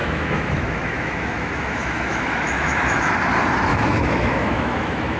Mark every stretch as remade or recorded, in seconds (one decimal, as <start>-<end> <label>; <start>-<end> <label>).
0.0-3.1 remade; 3.1-3.7 recorded; 3.7-5.2 remade